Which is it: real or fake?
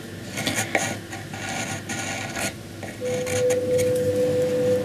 real